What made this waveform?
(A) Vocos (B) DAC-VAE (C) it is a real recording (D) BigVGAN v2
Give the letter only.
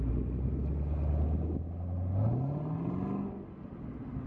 C